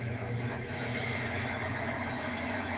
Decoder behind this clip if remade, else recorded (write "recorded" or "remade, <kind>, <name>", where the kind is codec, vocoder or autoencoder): remade, autoencoder, DAC-VAE